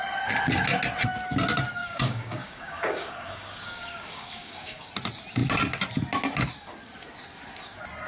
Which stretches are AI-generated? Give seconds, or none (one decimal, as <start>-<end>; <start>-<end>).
1.8-4.9